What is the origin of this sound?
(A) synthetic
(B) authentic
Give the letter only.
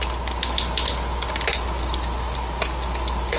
B